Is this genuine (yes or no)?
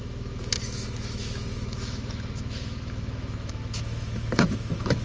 no